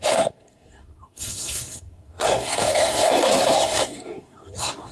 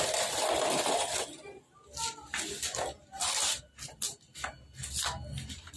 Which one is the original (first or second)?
second